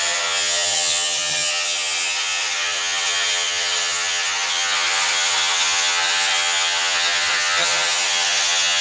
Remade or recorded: remade